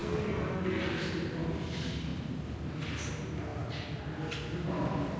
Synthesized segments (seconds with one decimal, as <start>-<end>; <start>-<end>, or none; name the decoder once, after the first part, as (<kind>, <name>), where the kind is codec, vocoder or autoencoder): 0.0-0.9 (codec, SNAC)